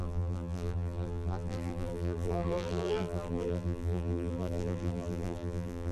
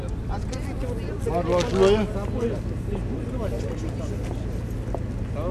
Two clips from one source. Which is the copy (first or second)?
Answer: first